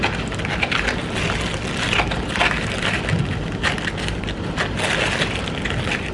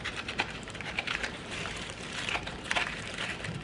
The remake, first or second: second